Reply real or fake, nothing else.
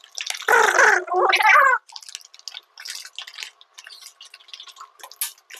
real